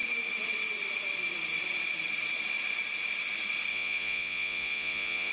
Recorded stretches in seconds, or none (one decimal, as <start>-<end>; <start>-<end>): 0.0-3.7